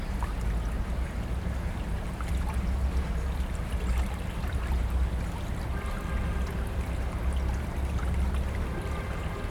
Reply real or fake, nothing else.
real